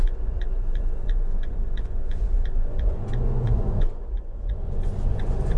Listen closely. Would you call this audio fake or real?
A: fake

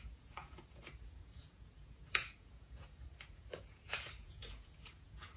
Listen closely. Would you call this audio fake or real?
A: fake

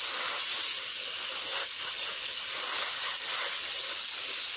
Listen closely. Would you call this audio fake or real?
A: real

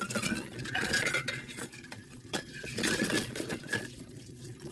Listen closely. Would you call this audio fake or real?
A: fake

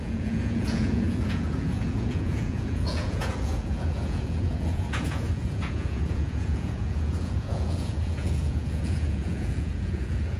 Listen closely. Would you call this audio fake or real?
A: fake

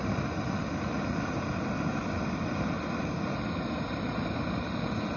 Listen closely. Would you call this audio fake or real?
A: real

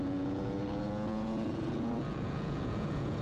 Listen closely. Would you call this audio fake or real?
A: fake